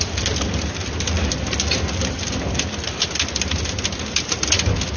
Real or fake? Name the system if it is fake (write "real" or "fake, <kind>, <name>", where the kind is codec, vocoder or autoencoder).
real